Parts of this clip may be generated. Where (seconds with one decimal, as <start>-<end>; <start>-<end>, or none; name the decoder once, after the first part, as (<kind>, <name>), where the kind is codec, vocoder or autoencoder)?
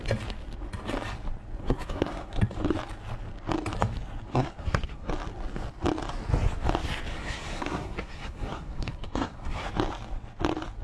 1.6-2.4 (codec, SNAC); 4.3-5.1; 7.1-9.7